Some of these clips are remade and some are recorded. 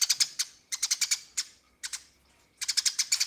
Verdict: recorded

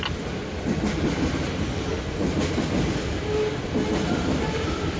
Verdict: recorded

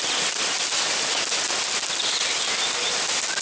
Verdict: recorded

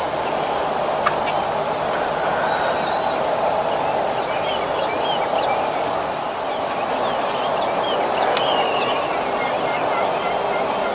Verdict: recorded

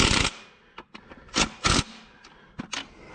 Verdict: recorded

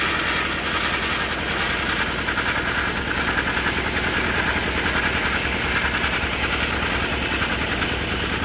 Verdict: recorded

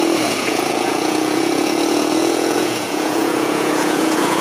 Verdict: remade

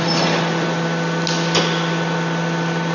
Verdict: recorded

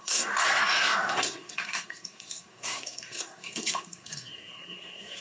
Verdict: remade